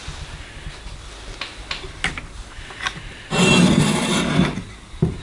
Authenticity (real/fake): real